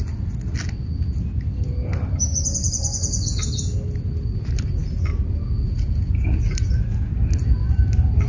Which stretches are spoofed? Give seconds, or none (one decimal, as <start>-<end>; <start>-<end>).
none